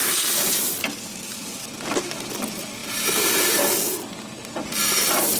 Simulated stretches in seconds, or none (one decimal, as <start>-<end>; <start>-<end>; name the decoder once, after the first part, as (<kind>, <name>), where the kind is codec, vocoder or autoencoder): 0.0-0.7 (vocoder, BigVGAN v2); 2.8-4.0